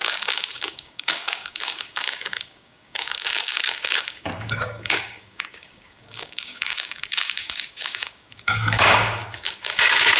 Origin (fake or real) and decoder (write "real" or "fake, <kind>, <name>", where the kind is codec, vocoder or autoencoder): fake, codec, DAC